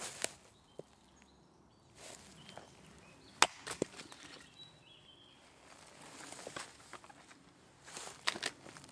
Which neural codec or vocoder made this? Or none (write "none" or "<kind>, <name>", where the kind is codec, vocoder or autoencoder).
none